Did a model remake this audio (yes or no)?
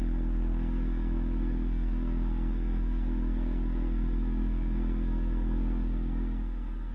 yes